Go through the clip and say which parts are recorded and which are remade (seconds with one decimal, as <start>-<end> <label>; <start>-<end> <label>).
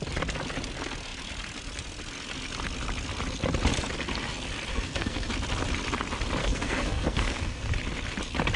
0.0-4.7 recorded; 4.7-5.3 remade; 5.3-6.4 recorded; 6.4-7.7 remade; 7.7-8.6 recorded